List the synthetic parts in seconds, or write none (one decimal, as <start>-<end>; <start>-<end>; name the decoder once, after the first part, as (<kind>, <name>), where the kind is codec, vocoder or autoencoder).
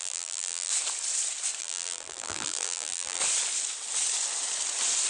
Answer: 0.0-0.7 (vocoder, BigVGAN v2); 1.6-3.2